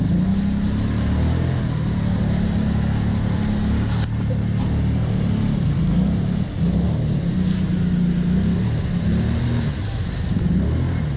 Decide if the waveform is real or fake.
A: real